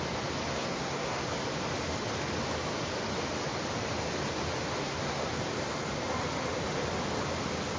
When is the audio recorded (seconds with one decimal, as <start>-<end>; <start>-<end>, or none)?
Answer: 0.0-0.5; 1.2-4.8; 5.3-7.8